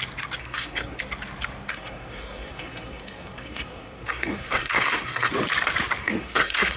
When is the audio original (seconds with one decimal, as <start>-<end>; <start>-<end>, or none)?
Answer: 0.0-0.4; 1.0-1.7; 5.3-6.0